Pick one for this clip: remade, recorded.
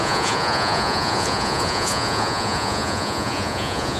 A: remade